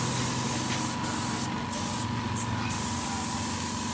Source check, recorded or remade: recorded